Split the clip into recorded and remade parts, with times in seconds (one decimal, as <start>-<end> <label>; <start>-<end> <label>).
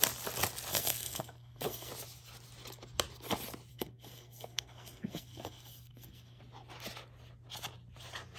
0.0-0.7 recorded; 0.7-1.9 remade; 1.9-3.7 recorded; 3.7-6.4 remade; 6.4-8.4 recorded